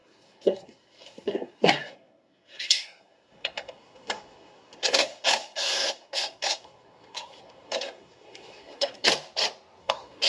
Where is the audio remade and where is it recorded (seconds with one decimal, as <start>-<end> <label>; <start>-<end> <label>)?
0.0-9.1 remade; 9.1-9.8 recorded; 9.8-10.3 remade